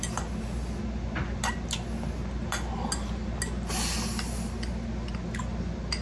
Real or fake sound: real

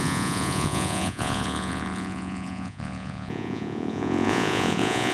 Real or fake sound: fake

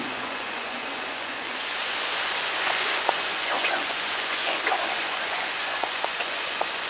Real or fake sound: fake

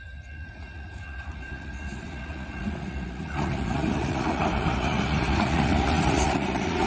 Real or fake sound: fake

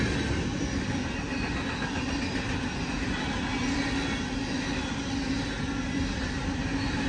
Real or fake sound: real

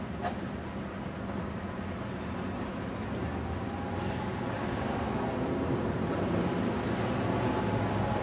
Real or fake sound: real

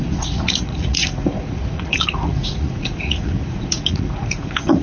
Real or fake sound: fake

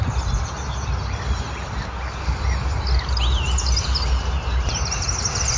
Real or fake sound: real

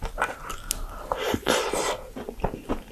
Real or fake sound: real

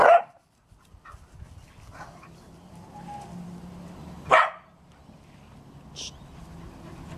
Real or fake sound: real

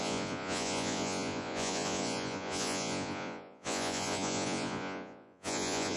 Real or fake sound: fake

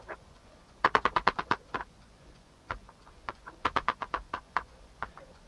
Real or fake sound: fake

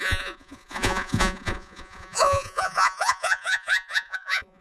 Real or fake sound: fake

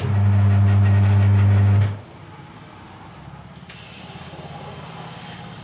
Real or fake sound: real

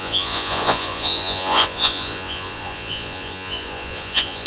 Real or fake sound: fake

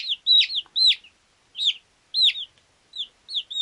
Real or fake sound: real